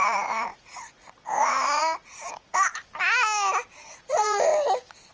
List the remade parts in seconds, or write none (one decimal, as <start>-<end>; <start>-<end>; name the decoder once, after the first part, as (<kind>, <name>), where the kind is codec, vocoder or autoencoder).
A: 0.0-2.7 (vocoder, Vocos); 3.9-4.5